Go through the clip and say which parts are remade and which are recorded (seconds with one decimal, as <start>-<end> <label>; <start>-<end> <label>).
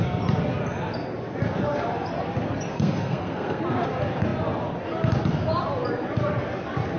0.0-2.7 recorded; 2.7-3.6 remade; 3.6-7.0 recorded